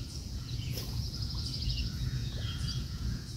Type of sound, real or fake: fake